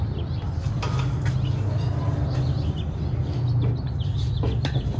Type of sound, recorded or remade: recorded